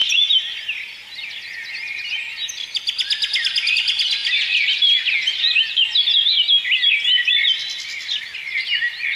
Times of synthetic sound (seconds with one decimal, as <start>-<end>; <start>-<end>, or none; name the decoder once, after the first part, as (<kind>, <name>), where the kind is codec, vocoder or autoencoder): none